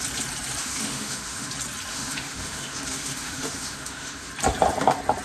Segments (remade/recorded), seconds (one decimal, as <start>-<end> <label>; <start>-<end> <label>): 0.0-0.6 recorded; 0.6-1.5 remade; 1.5-1.9 recorded; 1.9-4.3 remade; 4.3-5.2 recorded